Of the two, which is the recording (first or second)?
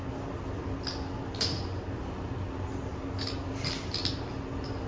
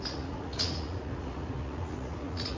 first